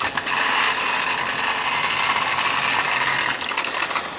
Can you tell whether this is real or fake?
real